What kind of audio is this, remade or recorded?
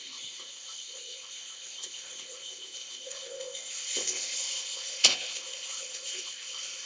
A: remade